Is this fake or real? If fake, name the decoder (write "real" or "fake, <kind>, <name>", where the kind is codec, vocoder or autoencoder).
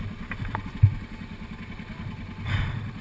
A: real